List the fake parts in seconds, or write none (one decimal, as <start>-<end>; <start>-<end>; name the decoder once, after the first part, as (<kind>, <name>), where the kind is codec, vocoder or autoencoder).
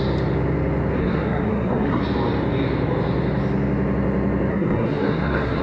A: 1.0-2.0 (codec, SNAC); 4.5-5.6